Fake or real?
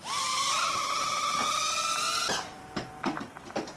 real